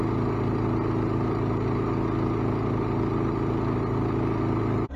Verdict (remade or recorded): recorded